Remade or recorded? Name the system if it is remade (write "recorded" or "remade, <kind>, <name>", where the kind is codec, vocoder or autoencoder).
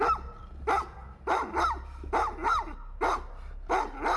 recorded